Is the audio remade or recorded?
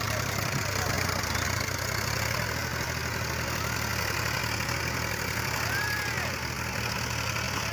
remade